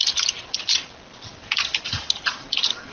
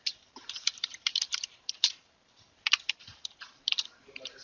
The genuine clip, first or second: first